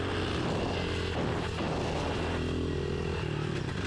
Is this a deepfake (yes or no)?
no